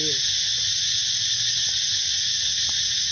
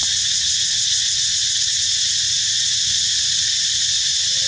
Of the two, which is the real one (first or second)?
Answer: first